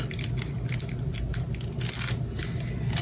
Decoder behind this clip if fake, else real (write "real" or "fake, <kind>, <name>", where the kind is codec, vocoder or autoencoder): real